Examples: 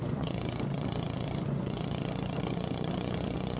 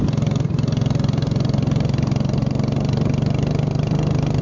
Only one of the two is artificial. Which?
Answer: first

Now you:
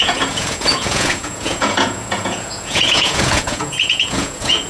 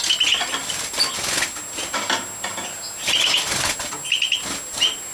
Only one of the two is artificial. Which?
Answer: first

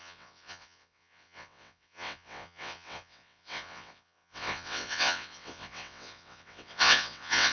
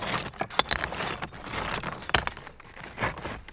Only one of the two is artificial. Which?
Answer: first